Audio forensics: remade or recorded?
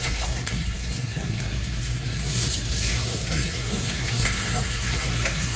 remade